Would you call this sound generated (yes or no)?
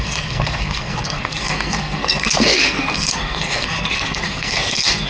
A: yes